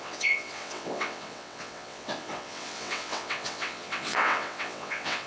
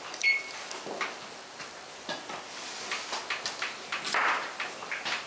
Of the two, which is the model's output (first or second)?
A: first